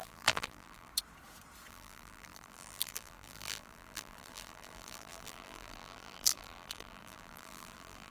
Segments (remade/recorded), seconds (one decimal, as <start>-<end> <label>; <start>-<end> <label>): 0.0-0.9 remade; 0.9-1.7 recorded; 1.7-8.1 remade